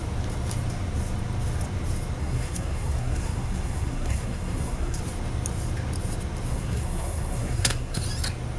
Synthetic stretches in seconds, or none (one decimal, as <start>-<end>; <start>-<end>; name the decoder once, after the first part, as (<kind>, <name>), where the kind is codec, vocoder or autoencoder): 2.2-5.0 (codec, SNAC); 6.5-8.0